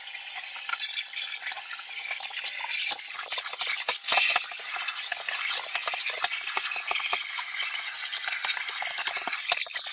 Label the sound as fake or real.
real